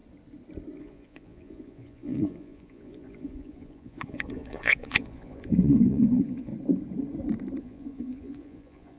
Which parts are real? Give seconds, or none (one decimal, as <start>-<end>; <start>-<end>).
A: 0.0-0.8; 6.5-7.6